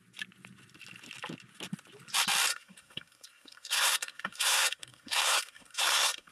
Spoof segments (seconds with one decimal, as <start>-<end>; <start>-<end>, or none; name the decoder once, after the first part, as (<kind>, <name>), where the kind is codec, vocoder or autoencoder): 2.5-6.3 (codec, SNAC)